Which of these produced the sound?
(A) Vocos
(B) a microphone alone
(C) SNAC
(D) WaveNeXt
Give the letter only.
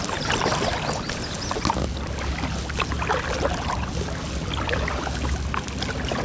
B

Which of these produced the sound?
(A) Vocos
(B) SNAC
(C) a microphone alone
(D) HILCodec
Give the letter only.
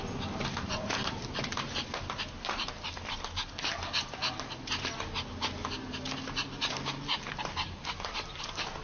C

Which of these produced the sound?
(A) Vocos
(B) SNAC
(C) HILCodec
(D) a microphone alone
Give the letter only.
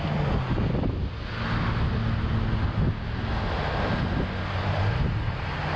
D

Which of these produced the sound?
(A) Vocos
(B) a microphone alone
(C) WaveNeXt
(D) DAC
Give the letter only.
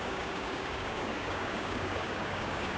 D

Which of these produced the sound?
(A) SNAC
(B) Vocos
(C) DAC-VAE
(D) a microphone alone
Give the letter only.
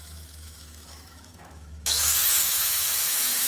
C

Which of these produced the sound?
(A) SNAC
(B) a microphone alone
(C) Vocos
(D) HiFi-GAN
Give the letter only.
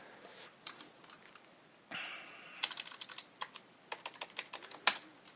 B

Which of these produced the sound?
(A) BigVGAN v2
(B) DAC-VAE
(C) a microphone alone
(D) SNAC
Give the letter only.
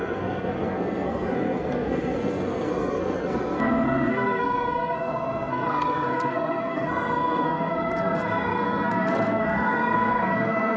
D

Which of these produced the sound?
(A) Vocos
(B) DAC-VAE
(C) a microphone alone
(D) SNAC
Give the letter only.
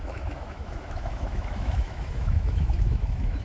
B